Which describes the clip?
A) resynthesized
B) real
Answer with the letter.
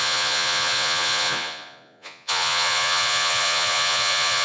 A